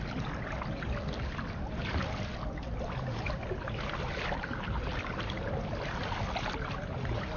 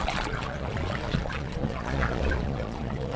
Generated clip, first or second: second